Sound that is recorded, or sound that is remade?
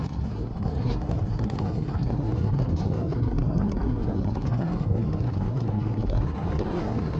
remade